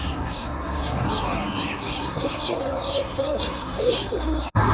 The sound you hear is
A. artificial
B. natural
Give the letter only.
A